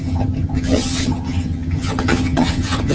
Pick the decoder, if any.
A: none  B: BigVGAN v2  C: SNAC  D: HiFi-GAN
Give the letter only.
D